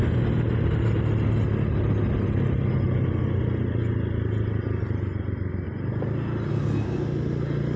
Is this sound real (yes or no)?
yes